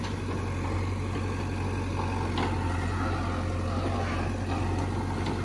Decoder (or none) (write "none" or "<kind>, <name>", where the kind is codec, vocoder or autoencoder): none